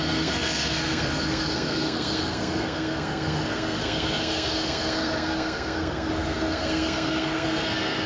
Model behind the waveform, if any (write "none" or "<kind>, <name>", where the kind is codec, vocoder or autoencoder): codec, SNAC